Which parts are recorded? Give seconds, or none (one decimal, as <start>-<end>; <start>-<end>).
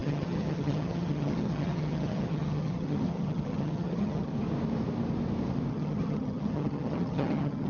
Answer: 4.3-5.7